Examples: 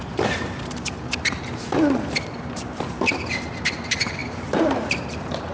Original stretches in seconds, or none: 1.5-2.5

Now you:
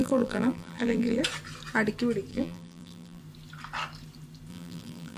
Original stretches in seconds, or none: 1.2-2.3; 3.2-4.5

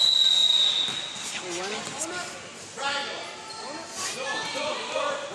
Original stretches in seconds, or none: 0.0-5.3